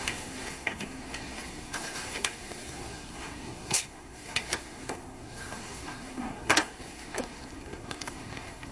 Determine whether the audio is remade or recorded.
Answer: remade